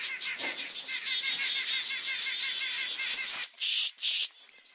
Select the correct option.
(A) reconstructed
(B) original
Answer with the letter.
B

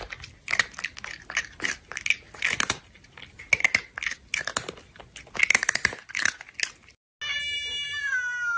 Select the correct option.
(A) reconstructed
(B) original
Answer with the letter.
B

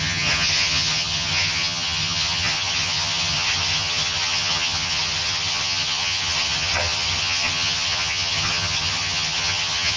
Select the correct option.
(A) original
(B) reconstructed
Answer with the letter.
B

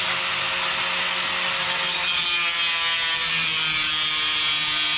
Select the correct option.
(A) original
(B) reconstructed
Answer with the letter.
A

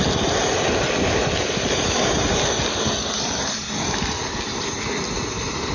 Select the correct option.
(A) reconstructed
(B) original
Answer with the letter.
B